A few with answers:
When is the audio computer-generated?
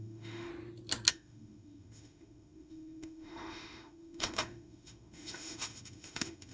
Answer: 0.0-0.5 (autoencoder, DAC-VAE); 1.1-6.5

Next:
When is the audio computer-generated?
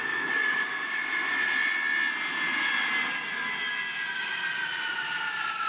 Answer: 0.0-1.0 (codec, DAC)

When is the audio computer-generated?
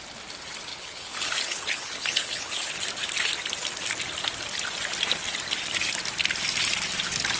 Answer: 0.7-2.8 (codec, HILCodec)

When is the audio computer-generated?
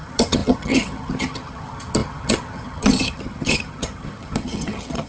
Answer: 0.0-5.1 (vocoder, HiFi-GAN)